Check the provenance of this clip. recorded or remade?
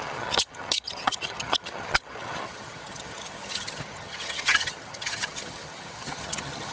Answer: remade